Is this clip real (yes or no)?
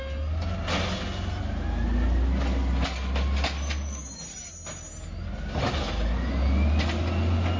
yes